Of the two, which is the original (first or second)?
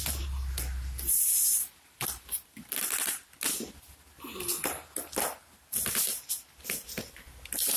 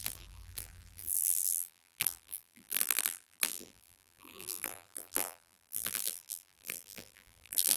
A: first